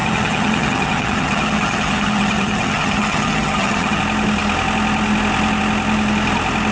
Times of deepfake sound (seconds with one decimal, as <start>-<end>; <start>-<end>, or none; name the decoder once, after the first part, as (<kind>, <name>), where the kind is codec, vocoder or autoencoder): 0.0-4.0 (vocoder, HiFi-GAN)